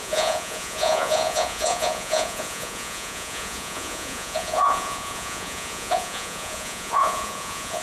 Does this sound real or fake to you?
fake